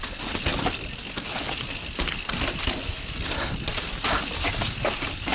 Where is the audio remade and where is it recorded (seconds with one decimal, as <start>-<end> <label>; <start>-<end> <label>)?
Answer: 0.0-5.3 recorded